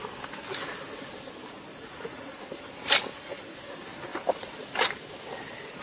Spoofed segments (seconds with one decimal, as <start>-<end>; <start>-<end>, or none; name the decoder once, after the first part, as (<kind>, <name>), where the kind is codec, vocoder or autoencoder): 1.7-2.3 (vocoder, Vocos); 3.1-3.6